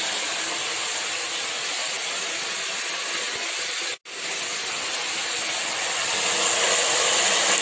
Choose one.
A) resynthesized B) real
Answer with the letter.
B